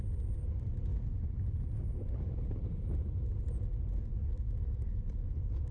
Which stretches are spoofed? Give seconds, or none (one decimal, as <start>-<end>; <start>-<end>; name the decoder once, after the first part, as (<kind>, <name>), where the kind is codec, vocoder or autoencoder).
none